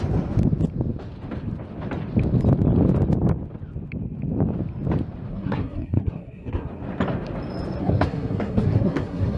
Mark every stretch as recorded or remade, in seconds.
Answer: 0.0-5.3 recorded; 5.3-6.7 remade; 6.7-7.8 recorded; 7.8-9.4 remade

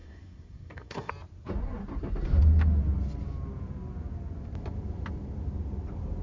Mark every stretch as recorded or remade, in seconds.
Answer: 0.0-1.1 remade; 1.1-6.2 recorded

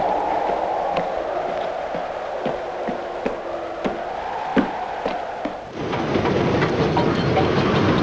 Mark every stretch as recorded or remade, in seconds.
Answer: 0.0-8.0 recorded

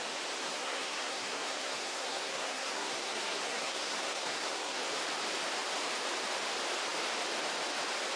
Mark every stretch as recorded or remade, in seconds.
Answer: 0.0-0.4 recorded; 0.4-4.8 remade; 4.8-8.2 recorded

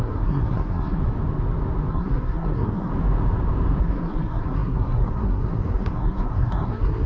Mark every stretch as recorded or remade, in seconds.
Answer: 0.0-1.0 remade; 1.0-1.9 recorded; 1.9-2.9 remade; 2.9-3.8 recorded; 3.8-7.1 remade

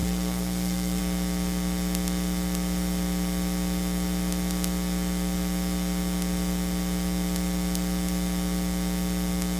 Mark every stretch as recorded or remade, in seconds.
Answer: 0.0-1.0 remade; 1.0-9.6 recorded

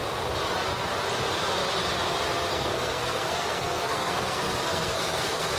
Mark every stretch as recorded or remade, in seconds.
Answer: 0.0-2.5 recorded; 2.5-5.6 remade